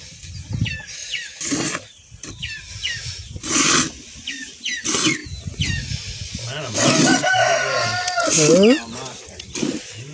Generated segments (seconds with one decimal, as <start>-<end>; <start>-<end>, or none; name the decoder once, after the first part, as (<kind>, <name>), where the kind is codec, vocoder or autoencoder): none